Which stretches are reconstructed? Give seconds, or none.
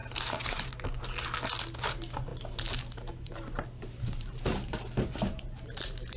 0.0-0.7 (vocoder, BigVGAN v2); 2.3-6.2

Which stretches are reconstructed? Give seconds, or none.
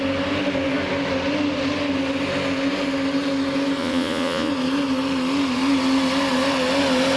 3.8-4.5 (vocoder, Vocos)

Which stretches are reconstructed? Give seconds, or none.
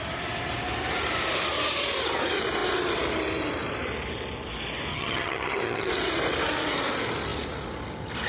4.9-5.9 (vocoder, HiFi-GAN)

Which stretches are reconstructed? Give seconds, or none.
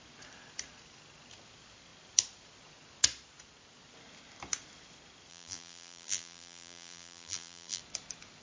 5.3-7.8 (vocoder, BigVGAN v2)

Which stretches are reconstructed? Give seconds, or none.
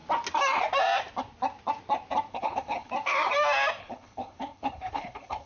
2.3-2.9 (codec, HILCodec); 3.8-5.5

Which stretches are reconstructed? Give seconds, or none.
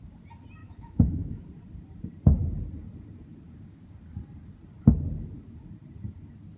0.6-1.4 (autoencoder, DAC-VAE)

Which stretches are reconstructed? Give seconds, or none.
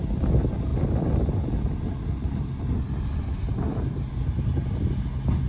none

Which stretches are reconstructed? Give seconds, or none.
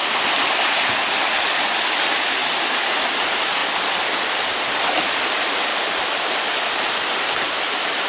0.0-2.4 (vocoder, BigVGAN v2); 3.0-3.6; 4.9-5.7; 7.1-8.1